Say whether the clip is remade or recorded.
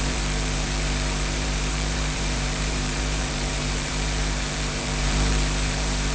remade